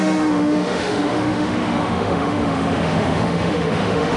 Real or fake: fake